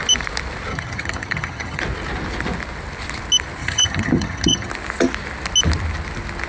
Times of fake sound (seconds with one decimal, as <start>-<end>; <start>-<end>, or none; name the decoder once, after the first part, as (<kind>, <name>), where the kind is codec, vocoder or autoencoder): 0.7-1.8 (vocoder, HiFi-GAN); 3.6-4.7